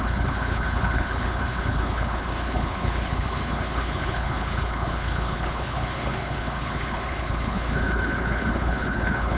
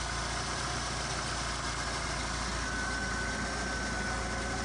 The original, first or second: second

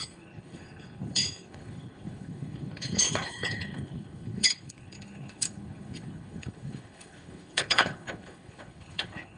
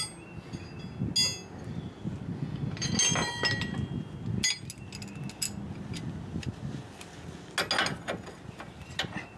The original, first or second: second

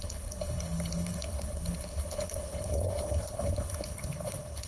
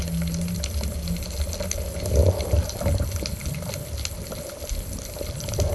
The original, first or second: second